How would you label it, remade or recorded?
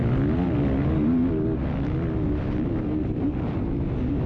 recorded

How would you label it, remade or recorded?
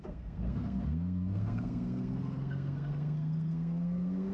remade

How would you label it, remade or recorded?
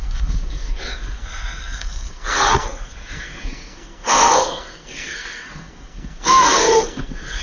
remade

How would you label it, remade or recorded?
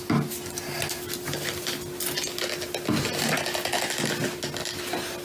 recorded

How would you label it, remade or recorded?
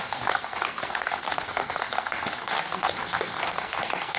remade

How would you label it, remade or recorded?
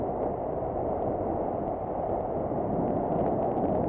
recorded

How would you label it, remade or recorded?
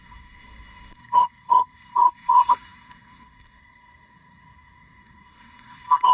remade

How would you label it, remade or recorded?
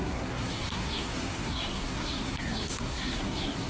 remade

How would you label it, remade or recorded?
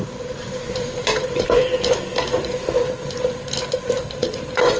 recorded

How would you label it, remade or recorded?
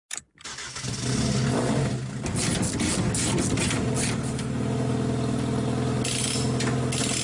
recorded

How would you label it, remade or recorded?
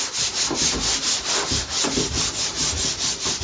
recorded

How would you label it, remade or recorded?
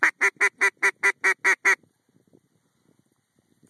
recorded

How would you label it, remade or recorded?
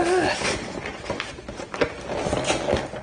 recorded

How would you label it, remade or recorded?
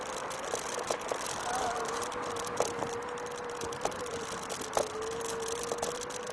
recorded